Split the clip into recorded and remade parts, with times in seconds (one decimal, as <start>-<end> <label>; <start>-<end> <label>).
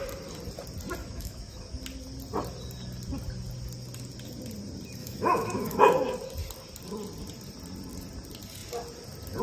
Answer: 0.0-1.0 recorded; 1.0-1.6 remade; 1.6-5.0 recorded; 5.0-5.8 remade; 5.8-9.4 recorded